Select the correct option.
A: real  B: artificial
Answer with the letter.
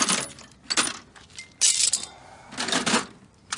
A